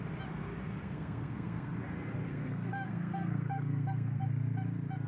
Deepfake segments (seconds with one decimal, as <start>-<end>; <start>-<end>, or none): 0.8-1.8; 2.3-4.2